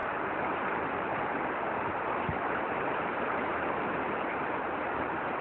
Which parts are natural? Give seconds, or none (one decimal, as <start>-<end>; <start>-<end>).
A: 0.0-5.4